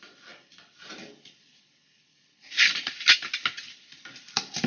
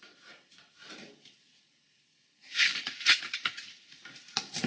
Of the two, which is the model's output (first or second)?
second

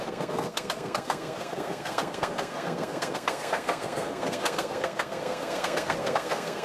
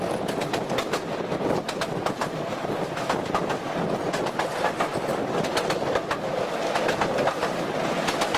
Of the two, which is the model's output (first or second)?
first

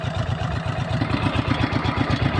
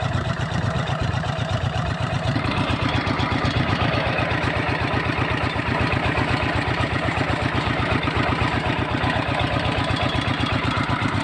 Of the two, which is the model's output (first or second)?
second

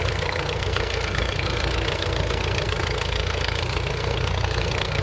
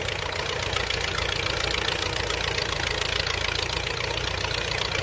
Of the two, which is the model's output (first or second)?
first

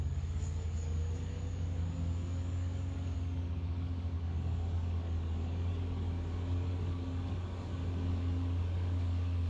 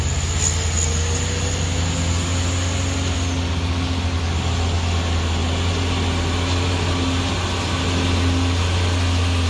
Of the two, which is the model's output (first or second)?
first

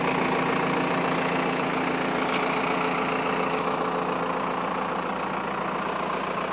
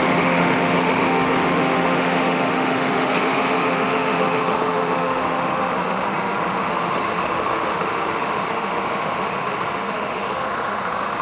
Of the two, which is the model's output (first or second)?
second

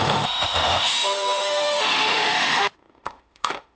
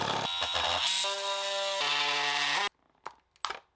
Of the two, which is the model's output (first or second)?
first